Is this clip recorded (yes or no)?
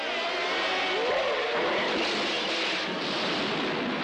yes